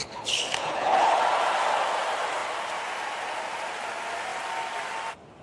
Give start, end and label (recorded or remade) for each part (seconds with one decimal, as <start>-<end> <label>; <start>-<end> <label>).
0.0-1.2 remade; 1.2-5.4 recorded